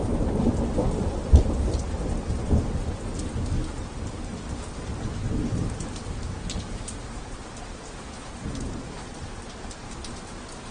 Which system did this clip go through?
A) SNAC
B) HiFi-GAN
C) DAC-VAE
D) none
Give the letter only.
D